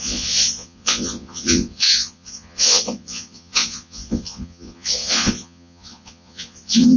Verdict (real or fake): fake